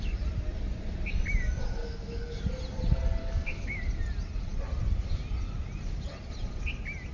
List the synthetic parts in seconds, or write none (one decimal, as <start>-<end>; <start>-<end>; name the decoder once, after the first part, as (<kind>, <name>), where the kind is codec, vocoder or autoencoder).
1.8-2.4 (codec, DAC); 3.2-3.8